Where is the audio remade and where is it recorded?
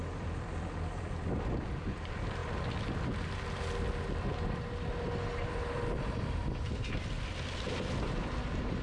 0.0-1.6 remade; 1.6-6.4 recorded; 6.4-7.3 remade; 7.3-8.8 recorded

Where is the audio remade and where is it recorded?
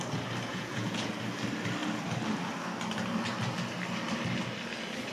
0.0-0.5 recorded; 0.5-1.1 remade; 1.1-5.1 recorded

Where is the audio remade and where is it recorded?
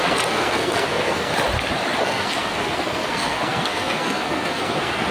0.0-1.3 remade; 1.3-2.0 recorded; 2.0-5.1 remade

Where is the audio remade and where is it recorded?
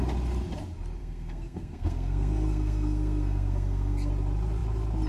0.0-1.0 recorded; 1.0-4.1 remade; 4.1-5.1 recorded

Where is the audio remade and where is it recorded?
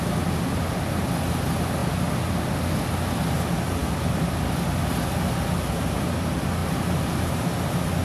0.0-8.0 recorded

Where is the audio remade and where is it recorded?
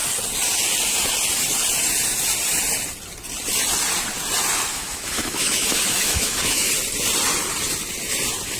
0.0-4.7 recorded; 4.7-6.7 remade; 6.7-8.6 recorded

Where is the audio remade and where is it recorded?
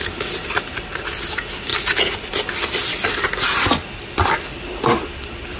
0.0-5.6 recorded